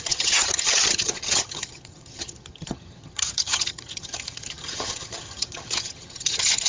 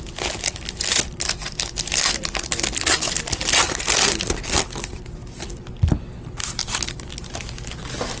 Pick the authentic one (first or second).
second